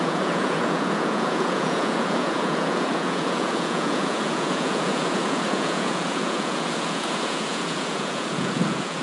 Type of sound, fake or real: fake